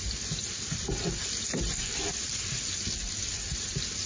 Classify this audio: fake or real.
real